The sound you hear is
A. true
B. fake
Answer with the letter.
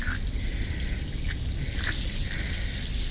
A